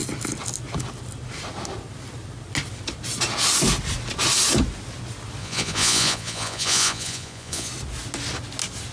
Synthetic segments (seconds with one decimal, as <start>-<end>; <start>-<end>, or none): 5.4-7.7